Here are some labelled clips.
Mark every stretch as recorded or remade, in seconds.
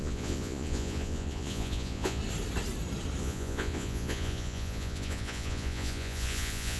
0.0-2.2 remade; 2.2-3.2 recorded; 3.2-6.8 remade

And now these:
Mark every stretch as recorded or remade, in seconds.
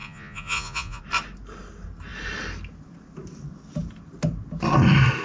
0.0-1.0 remade; 1.0-5.2 recorded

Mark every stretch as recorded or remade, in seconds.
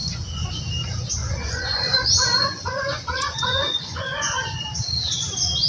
0.0-0.5 remade; 0.5-1.2 recorded; 1.2-4.6 remade; 4.6-5.7 recorded